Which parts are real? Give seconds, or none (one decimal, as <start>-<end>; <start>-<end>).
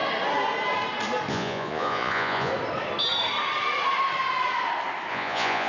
0.0-1.3; 2.5-5.1